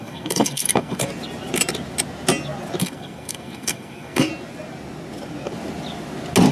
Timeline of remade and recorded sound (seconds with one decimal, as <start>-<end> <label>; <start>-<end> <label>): 0.0-1.1 remade; 1.1-2.8 recorded; 2.8-4.3 remade; 4.3-6.5 recorded